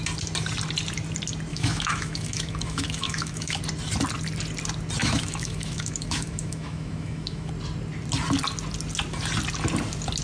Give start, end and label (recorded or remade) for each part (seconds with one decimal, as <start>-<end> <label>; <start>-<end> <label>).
0.0-1.5 recorded; 1.5-3.6 remade; 3.6-5.0 recorded; 5.0-7.5 remade; 7.5-10.2 recorded